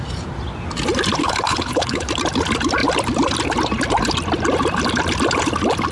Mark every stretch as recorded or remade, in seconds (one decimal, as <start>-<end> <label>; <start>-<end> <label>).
0.0-1.2 recorded; 1.2-2.1 remade; 2.1-5.9 recorded